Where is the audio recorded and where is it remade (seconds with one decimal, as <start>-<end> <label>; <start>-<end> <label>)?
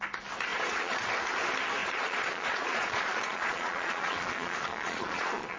0.0-0.5 recorded; 0.5-1.1 remade; 1.1-1.8 recorded; 1.8-5.6 remade